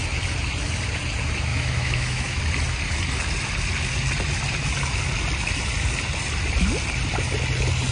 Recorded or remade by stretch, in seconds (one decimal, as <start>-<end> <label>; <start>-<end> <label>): 0.0-1.5 recorded; 1.5-2.4 remade; 2.4-7.9 recorded